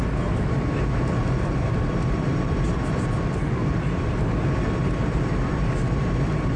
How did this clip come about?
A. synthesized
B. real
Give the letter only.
B